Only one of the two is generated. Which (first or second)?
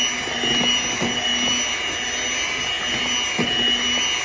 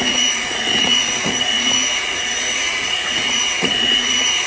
second